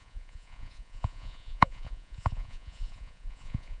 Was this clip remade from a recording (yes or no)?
yes